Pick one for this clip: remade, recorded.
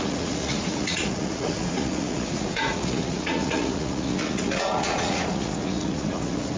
remade